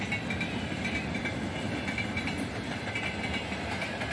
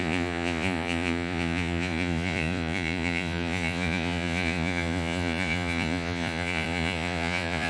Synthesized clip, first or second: second